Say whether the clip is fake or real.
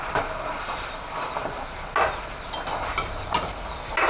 real